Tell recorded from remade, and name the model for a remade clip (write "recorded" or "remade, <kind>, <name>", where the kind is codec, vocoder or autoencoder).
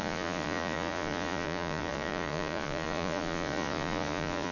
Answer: remade, vocoder, Vocos